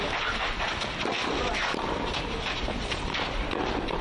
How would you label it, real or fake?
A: real